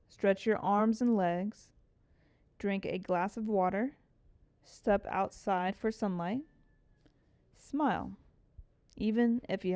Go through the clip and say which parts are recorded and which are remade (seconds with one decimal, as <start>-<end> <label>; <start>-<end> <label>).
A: 0.0-0.8 remade; 0.8-4.7 recorded; 4.7-5.7 remade; 5.7-9.8 recorded